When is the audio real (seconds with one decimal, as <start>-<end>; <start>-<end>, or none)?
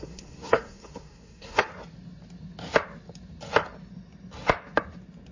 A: 1.7-5.3